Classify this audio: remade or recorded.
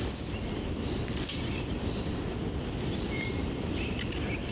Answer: remade